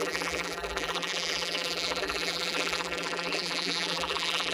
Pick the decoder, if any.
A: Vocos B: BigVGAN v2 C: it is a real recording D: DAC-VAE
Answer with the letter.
B